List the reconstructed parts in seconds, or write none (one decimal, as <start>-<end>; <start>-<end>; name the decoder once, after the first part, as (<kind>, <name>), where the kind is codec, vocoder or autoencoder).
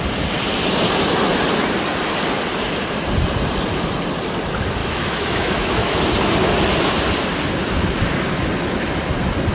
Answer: 4.8-6.0 (autoencoder, DAC-VAE)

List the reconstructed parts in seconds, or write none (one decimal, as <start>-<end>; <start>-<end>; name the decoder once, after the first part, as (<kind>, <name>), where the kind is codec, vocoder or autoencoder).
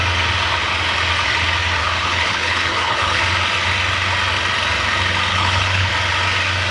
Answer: 1.8-3.2 (codec, HILCodec); 5.3-5.9